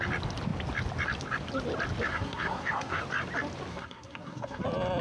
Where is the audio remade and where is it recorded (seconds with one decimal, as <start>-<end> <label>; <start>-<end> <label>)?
0.0-2.1 recorded; 2.1-3.0 remade; 3.0-3.7 recorded; 3.7-4.6 remade; 4.6-5.0 recorded